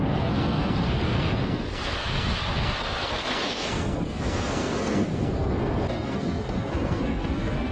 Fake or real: fake